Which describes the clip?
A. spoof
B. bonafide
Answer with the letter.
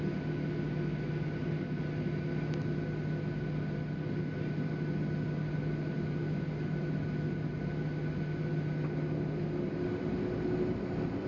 B